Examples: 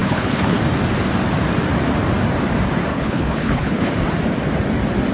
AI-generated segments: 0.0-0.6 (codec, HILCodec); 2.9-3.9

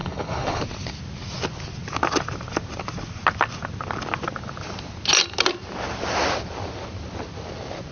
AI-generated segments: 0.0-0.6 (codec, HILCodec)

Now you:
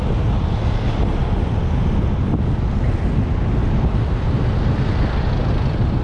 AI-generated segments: none